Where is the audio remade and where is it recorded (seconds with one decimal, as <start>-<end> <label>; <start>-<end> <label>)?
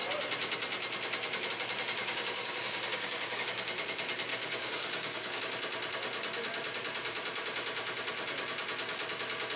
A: 0.0-2.0 recorded; 2.0-3.4 remade; 3.4-4.3 recorded; 4.3-5.4 remade; 5.4-9.6 recorded